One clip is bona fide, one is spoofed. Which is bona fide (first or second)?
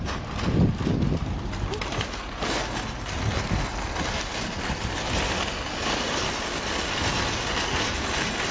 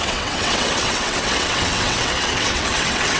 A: first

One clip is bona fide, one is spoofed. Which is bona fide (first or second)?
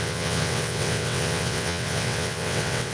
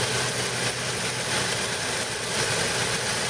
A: second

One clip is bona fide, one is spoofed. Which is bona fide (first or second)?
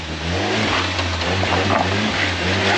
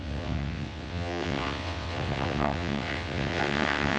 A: first